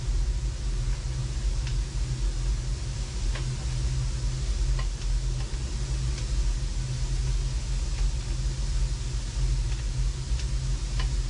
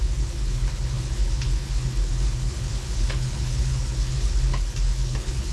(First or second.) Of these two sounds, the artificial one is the second